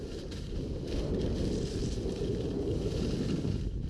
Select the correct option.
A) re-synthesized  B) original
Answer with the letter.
B